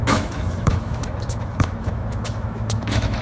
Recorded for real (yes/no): no